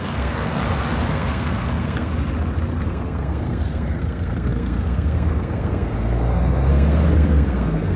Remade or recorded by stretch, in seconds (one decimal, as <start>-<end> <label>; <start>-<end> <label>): 0.0-0.6 remade; 0.6-1.1 recorded; 1.1-2.1 remade; 2.1-2.8 recorded; 2.8-8.0 remade

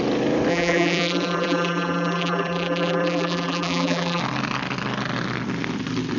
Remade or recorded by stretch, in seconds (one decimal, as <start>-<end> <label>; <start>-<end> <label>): 0.0-0.5 recorded; 0.5-4.2 remade; 4.2-6.2 recorded

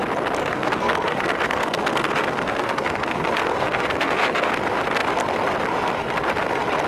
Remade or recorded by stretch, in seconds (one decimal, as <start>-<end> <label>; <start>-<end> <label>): 0.0-0.4 recorded; 0.4-4.5 remade; 4.5-6.9 recorded

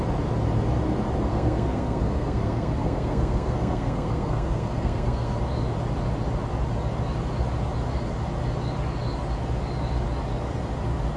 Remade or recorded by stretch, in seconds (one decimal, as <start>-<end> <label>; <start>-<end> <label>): 0.0-1.3 recorded; 1.3-5.4 remade; 5.4-11.2 recorded

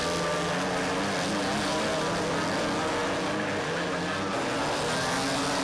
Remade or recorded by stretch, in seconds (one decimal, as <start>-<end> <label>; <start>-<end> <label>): 0.0-5.6 recorded

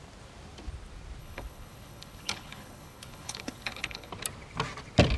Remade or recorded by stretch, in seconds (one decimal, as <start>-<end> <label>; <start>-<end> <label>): 0.0-1.2 recorded; 1.2-4.1 remade; 4.1-5.2 recorded